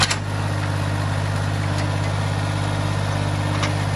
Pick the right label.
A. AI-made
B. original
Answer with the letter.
B